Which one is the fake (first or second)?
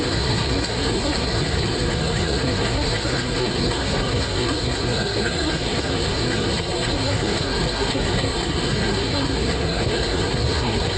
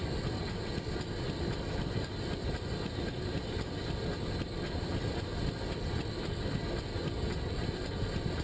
first